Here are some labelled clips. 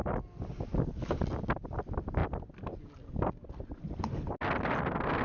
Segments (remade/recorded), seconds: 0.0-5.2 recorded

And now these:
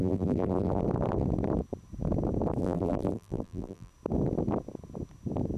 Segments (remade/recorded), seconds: 0.0-0.8 remade; 0.8-2.6 recorded; 2.6-3.9 remade; 3.9-5.6 recorded

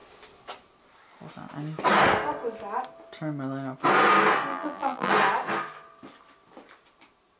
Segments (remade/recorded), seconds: 0.0-4.5 recorded; 4.5-5.1 remade; 5.1-7.4 recorded

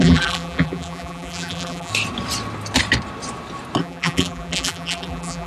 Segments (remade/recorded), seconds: 0.0-1.9 remade; 1.9-3.8 recorded; 3.8-5.5 remade

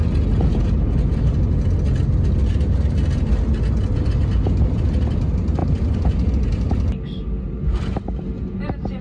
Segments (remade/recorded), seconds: 0.0-5.6 recorded; 5.6-6.3 remade; 6.3-9.0 recorded

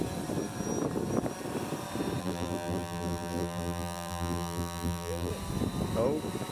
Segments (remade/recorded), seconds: 0.0-2.2 recorded; 2.2-5.3 remade; 5.3-6.5 recorded

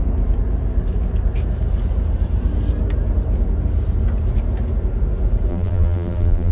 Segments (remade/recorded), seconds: 0.0-5.5 recorded; 5.5-6.5 remade

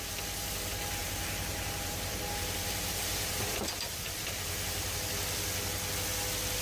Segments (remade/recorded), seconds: 0.0-1.0 recorded; 1.0-5.0 remade; 5.0-6.6 recorded